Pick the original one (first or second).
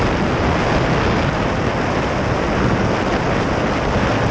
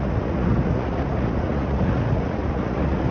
first